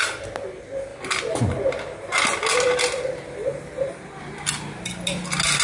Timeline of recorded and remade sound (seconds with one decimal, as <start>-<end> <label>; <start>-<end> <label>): 0.0-5.6 recorded